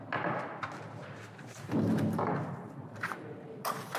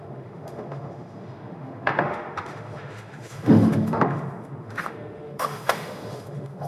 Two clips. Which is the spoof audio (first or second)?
second